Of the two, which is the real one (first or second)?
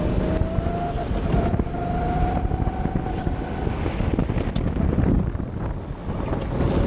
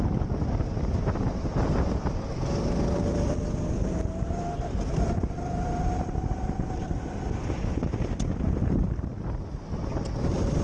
first